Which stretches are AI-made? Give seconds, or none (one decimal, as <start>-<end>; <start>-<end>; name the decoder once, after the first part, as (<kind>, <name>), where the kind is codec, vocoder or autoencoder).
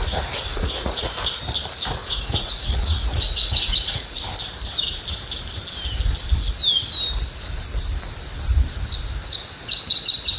0.5-1.1 (vocoder, Vocos); 2.0-4.2